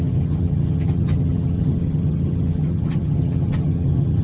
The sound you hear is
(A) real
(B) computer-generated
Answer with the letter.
B